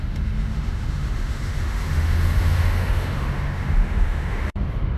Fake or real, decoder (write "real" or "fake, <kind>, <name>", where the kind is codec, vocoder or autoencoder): fake, autoencoder, DAC-VAE